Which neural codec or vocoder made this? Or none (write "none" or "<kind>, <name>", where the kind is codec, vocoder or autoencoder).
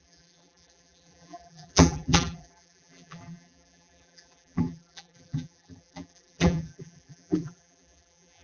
vocoder, BigVGAN v2